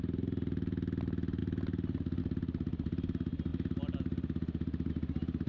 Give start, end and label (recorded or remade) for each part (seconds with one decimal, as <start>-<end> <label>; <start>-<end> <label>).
0.0-5.5 recorded